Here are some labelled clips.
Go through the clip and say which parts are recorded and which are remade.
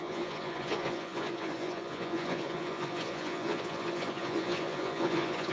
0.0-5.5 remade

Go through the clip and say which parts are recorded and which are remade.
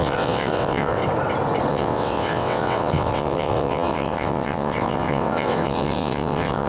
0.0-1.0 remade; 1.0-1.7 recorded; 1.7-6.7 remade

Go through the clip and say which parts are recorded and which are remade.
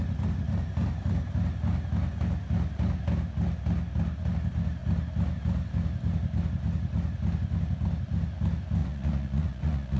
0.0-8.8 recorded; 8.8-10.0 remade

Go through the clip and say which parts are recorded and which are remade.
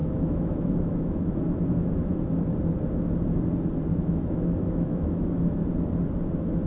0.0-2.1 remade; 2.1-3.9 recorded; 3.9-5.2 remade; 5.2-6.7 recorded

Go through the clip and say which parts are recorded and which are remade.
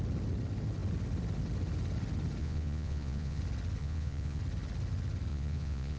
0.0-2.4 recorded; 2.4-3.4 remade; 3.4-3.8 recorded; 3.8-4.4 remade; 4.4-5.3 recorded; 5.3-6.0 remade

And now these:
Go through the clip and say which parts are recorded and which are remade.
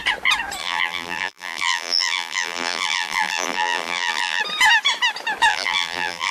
0.0-0.6 recorded; 0.6-4.4 remade; 4.4-5.5 recorded; 5.5-6.3 remade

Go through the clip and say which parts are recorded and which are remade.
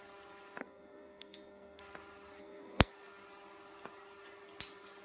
0.0-0.6 recorded; 0.6-1.8 remade; 1.8-2.4 recorded; 2.4-2.9 remade; 2.9-5.0 recorded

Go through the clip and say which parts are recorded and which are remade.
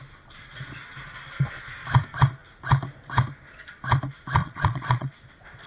0.0-4.4 recorded; 4.4-5.2 remade; 5.2-5.7 recorded